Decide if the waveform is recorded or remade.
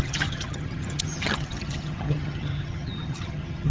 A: remade